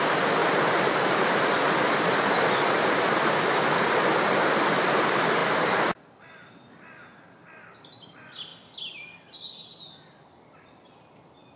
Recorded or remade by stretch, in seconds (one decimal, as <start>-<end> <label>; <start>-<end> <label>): 0.0-11.6 recorded